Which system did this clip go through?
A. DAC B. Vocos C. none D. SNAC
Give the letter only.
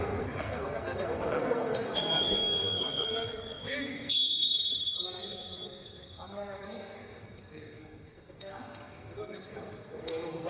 D